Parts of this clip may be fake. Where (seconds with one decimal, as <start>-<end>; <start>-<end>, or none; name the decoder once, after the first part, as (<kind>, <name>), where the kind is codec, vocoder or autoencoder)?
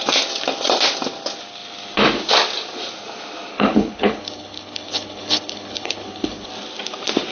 3.5-6.5 (codec, HILCodec)